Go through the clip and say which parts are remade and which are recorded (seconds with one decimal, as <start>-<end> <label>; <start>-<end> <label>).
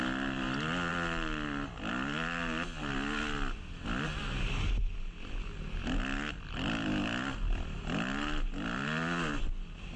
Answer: 0.0-10.0 recorded